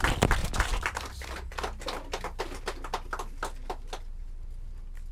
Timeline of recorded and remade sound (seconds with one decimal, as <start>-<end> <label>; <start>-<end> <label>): 0.0-0.4 recorded; 0.4-1.1 remade; 1.1-5.1 recorded